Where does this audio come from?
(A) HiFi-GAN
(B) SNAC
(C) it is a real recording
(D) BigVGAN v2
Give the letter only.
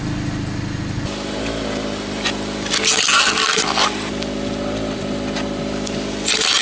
C